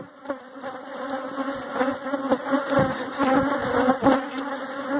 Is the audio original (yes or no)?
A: yes